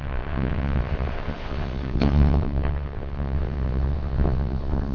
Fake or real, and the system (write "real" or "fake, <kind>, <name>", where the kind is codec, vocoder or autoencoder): fake, vocoder, WaveNeXt